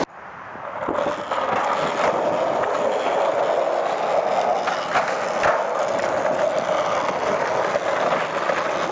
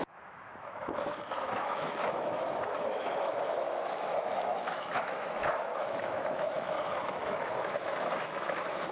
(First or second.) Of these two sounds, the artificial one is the second